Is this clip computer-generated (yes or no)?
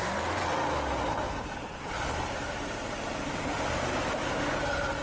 no